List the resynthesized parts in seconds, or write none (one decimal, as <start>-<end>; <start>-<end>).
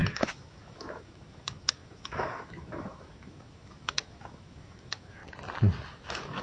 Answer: 0.0-5.2; 5.9-6.4